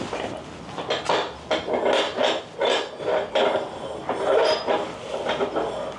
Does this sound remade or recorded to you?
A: recorded